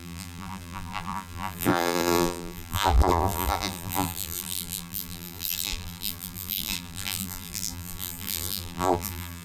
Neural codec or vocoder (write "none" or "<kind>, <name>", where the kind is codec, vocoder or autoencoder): vocoder, BigVGAN v2